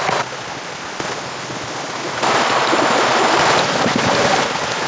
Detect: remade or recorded recorded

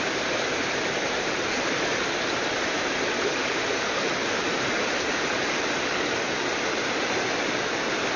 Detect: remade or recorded remade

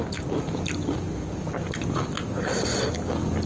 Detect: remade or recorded recorded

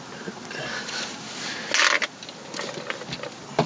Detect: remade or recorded recorded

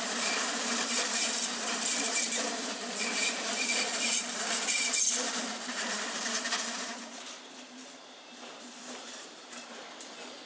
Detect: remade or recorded remade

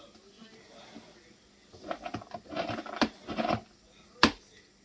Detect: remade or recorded recorded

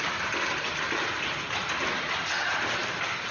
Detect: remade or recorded recorded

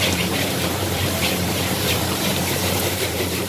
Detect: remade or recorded remade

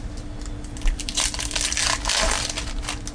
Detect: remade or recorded recorded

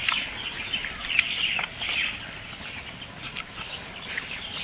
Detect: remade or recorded recorded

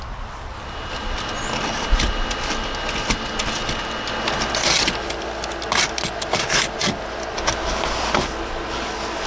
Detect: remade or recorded recorded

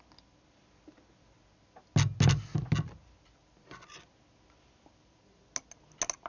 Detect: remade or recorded recorded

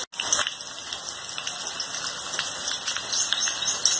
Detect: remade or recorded recorded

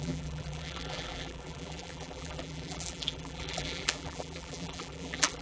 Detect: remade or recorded remade